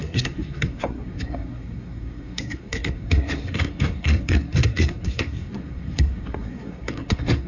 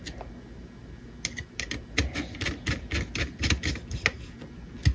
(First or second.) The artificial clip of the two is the first